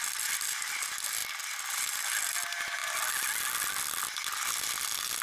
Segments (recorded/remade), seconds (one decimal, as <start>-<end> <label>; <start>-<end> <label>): 0.0-5.2 recorded